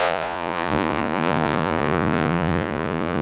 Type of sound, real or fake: fake